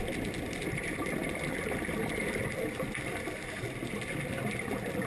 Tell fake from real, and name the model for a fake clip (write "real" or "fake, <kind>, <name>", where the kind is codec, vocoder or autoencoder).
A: real